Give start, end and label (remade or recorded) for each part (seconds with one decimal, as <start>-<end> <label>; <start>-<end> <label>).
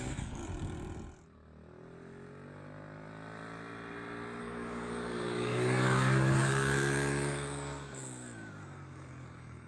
0.0-0.4 remade; 0.4-4.4 recorded; 4.4-9.7 remade